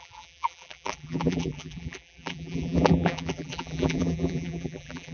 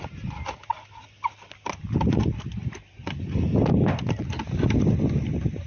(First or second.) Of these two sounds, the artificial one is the first